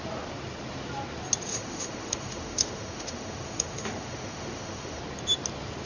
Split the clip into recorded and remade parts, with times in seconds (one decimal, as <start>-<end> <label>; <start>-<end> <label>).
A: 0.0-1.5 recorded; 1.5-5.0 remade; 5.0-5.9 recorded